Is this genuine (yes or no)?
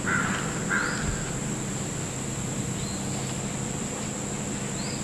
yes